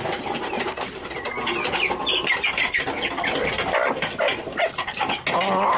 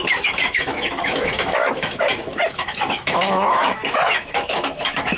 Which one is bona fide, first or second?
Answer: first